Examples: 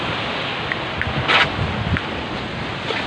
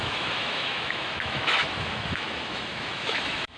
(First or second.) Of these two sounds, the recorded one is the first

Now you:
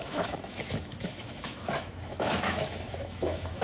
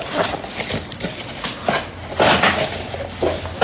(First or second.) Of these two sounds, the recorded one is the second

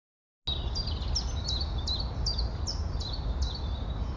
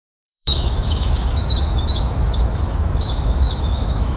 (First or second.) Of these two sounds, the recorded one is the first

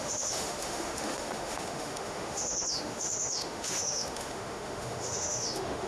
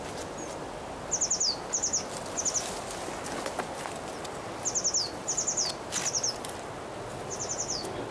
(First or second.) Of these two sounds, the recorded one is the second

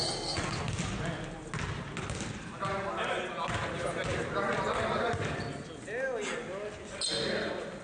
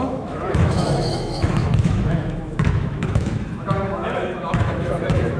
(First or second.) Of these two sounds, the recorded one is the first